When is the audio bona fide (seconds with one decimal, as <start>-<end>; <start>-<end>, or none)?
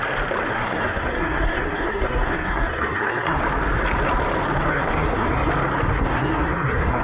0.0-0.5; 3.4-4.7; 5.5-5.9